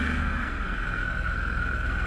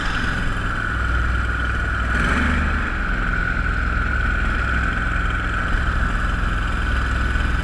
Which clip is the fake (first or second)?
first